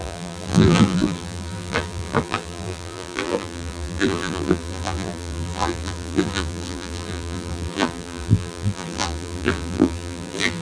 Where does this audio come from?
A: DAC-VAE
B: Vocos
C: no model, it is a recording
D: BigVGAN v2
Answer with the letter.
D